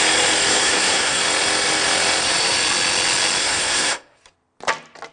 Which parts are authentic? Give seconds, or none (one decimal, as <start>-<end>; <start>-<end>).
0.0-0.5; 1.2-3.4; 4.2-5.1